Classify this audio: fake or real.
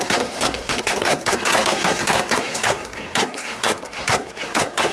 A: fake